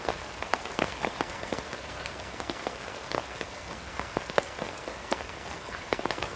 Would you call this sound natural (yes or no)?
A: no